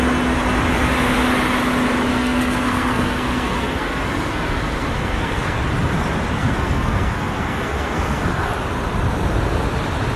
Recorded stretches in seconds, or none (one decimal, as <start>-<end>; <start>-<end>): 0.0-2.1; 5.6-6.4; 8.5-10.2